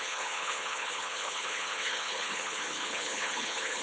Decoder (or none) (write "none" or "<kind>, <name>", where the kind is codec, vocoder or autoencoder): codec, HILCodec